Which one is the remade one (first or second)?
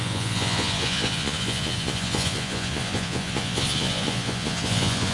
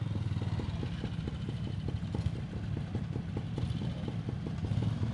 first